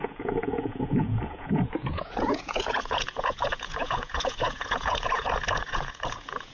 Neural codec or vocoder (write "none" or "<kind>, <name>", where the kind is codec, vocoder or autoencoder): vocoder, Vocos